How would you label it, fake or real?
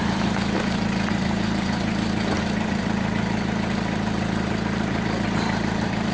fake